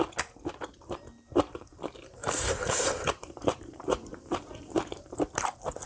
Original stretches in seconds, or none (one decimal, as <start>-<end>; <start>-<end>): 0.0-2.2